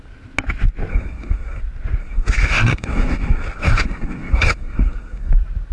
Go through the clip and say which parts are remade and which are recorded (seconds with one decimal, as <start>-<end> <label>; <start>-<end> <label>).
0.0-0.9 recorded; 0.9-1.6 remade; 1.6-2.0 recorded; 2.0-5.3 remade; 5.3-5.7 recorded